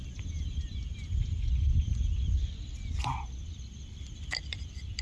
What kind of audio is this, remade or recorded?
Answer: recorded